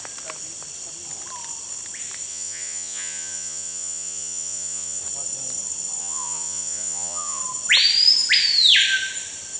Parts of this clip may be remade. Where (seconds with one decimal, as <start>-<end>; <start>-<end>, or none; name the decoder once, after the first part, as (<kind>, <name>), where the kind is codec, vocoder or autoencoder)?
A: 2.3-5.0 (vocoder, Vocos); 6.0-7.4